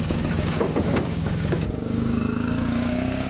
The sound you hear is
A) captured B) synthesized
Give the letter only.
B